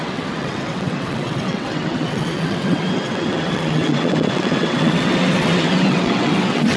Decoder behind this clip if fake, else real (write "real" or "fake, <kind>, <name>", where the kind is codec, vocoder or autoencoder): fake, vocoder, WaveNeXt